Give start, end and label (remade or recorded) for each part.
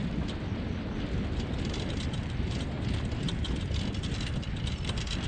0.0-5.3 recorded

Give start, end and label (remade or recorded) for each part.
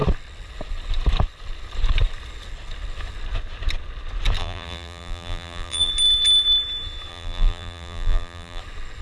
0.0-4.4 recorded; 4.4-5.9 remade; 5.9-7.1 recorded; 7.1-8.6 remade; 8.6-9.0 recorded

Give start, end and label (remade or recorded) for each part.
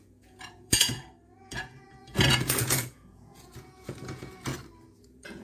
0.0-4.5 remade; 4.5-5.0 recorded; 5.0-5.4 remade